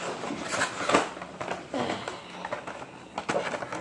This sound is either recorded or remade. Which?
recorded